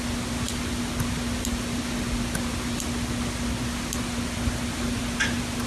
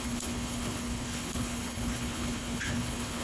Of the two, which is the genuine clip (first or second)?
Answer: first